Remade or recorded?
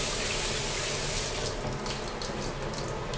recorded